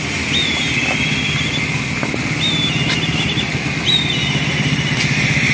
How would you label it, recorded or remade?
recorded